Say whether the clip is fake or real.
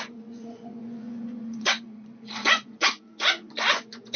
fake